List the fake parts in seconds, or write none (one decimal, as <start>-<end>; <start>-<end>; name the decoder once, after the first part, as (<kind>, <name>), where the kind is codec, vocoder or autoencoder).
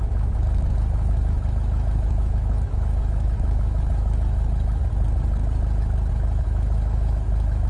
0.0-4.8 (autoencoder, DAC-VAE); 6.1-7.7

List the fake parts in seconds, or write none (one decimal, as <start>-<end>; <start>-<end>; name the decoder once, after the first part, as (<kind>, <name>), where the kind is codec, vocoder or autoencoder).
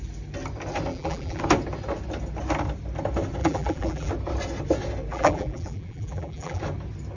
0.9-1.4 (vocoder, BigVGAN v2); 3.4-4.1; 5.1-6.6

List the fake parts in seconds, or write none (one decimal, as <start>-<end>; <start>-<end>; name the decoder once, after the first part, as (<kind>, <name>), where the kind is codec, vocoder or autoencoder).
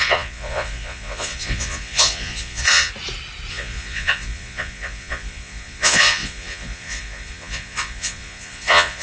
0.0-2.9 (vocoder, Vocos); 3.5-9.0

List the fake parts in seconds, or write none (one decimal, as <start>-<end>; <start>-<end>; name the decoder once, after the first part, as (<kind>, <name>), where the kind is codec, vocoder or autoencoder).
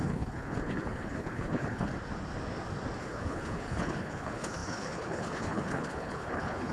0.0-1.9 (codec, HILCodec); 3.0-6.7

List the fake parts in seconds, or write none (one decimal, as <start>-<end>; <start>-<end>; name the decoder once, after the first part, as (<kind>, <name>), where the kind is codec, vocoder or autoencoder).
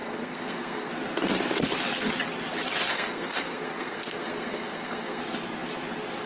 0.0-0.9 (codec, SNAC); 2.9-5.2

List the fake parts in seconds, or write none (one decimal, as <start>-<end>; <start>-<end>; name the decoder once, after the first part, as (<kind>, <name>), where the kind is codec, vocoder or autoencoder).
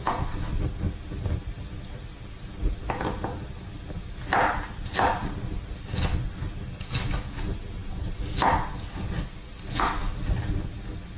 none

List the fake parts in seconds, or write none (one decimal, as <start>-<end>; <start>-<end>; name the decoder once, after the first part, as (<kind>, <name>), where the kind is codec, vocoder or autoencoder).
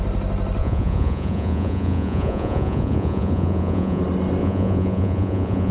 0.6-4.0 (vocoder, Vocos); 4.4-5.7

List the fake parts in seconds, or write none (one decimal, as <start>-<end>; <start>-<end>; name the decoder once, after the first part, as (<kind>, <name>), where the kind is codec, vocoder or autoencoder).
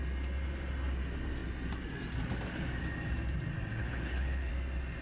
3.8-4.5 (codec, HILCodec)